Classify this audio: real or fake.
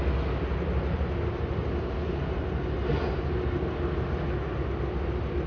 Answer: real